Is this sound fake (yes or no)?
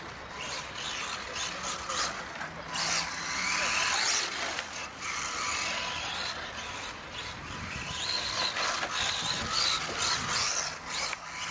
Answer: no